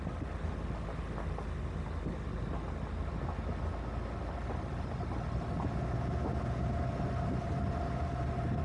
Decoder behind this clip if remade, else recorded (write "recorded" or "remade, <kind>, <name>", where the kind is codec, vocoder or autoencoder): recorded